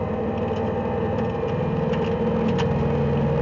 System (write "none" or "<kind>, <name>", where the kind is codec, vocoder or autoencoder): none